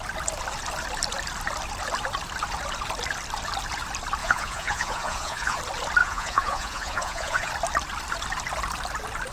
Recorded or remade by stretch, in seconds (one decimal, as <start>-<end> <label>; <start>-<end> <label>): 0.0-4.2 recorded; 4.2-5.6 remade; 5.6-6.0 recorded; 6.0-7.5 remade; 7.5-9.3 recorded